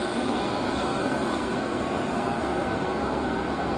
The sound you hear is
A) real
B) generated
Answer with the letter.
B